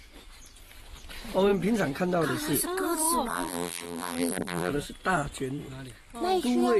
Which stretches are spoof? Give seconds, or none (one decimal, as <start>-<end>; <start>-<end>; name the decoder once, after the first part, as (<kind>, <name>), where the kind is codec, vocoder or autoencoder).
3.3-4.7 (vocoder, BigVGAN v2)